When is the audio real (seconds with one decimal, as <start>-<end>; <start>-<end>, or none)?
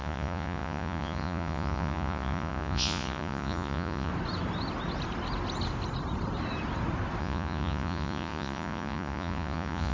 4.1-7.2